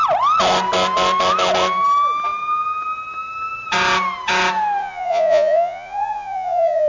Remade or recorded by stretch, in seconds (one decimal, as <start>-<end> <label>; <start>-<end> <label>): 0.0-4.8 recorded; 4.8-6.9 remade